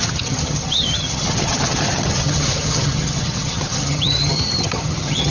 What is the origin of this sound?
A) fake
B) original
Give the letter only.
A